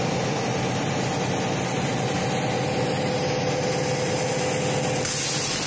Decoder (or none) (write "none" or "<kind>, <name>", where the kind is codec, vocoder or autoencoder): none